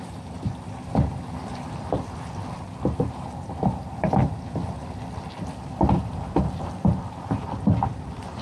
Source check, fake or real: fake